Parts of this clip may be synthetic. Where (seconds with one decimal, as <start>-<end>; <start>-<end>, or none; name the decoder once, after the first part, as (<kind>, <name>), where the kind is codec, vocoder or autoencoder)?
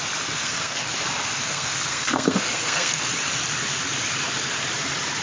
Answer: 0.4-0.9 (codec, SNAC); 1.4-3.1